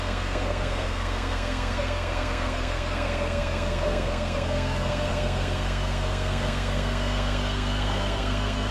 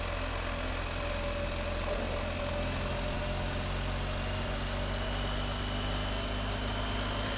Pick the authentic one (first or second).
second